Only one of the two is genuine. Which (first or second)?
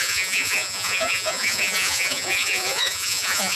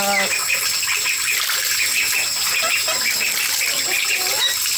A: second